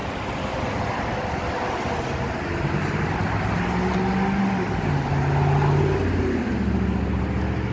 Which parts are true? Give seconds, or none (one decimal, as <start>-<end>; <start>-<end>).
0.0-7.7

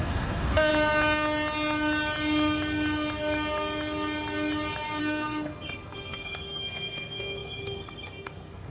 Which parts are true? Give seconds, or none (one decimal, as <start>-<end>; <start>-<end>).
0.7-5.0

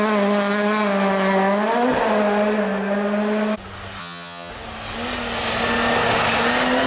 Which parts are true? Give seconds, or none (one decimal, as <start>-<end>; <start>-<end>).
0.0-4.0; 4.5-6.9